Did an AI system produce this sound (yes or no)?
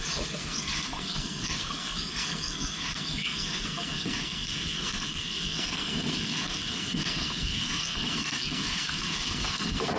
yes